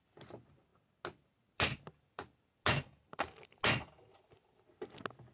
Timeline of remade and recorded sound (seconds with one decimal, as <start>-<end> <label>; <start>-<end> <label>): 0.0-5.3 recorded